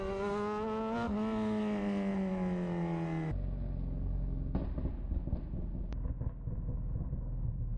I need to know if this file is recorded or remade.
recorded